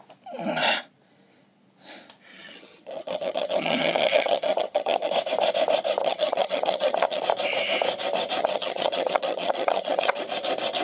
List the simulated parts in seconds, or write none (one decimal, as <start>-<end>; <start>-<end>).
2.3-5.1; 6.0-7.2; 8.4-10.2